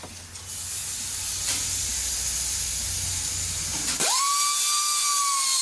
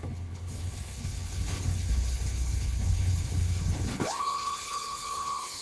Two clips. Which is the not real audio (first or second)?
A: second